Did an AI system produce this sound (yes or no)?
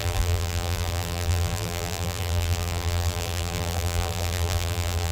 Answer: yes